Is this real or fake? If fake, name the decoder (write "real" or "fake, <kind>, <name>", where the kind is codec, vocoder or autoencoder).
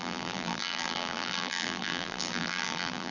fake, vocoder, BigVGAN v2